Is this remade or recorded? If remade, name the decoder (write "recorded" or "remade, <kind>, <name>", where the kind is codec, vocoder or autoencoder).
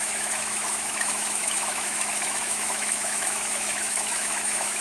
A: remade, autoencoder, DAC-VAE